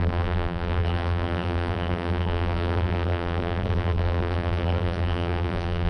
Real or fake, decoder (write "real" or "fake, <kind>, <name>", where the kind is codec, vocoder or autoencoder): fake, vocoder, BigVGAN v2